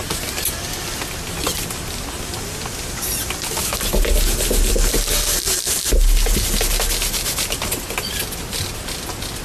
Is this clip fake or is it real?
real